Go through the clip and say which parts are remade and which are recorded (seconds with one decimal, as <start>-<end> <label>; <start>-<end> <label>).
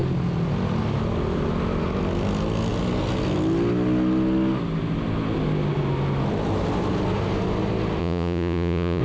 0.0-8.0 recorded; 8.0-9.0 remade